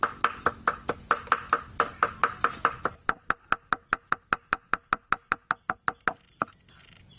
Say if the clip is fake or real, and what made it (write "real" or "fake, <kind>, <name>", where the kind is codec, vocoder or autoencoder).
real